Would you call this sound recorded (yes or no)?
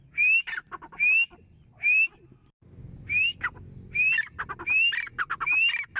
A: yes